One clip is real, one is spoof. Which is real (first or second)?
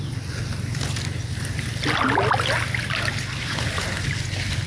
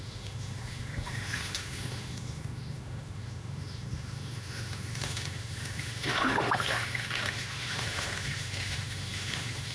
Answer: first